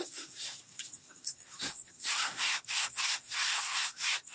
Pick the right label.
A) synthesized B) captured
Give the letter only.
A